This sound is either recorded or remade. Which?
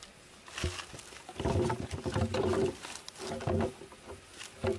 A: recorded